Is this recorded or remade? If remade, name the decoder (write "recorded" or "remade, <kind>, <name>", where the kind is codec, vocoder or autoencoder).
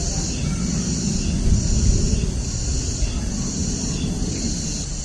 recorded